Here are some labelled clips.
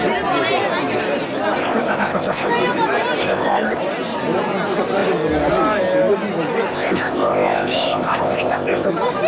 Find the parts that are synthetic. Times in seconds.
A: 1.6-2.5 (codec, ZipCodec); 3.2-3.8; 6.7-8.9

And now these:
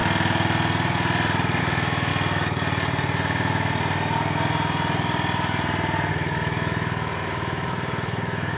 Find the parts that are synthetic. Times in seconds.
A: 1.6-2.1 (autoencoder, DAC-VAE); 6.1-8.6